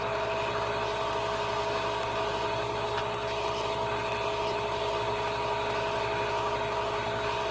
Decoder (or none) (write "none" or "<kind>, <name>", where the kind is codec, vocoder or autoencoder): none